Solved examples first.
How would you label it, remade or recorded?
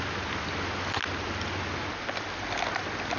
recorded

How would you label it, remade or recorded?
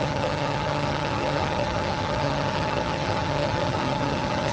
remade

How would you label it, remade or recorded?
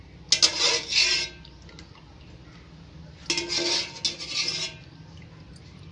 recorded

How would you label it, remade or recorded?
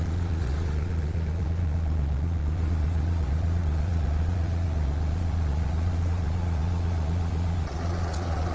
remade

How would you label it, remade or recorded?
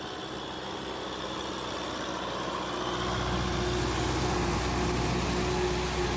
recorded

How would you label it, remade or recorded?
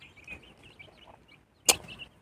recorded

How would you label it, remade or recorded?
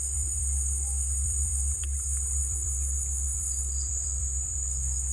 remade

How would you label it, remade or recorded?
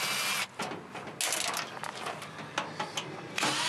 recorded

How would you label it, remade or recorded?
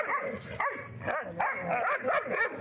recorded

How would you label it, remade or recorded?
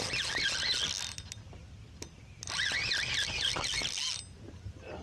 recorded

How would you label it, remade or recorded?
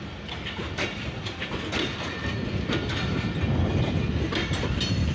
recorded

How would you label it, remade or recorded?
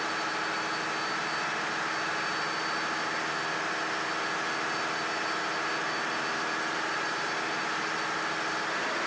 recorded